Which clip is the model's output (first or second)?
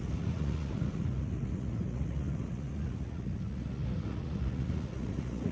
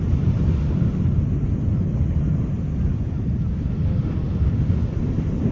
first